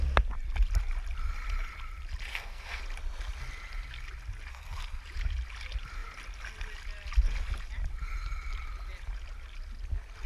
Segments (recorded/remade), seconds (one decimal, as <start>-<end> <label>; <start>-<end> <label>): 0.0-2.3 recorded; 2.3-2.8 remade; 2.8-4.5 recorded; 4.5-5.0 remade; 5.0-10.3 recorded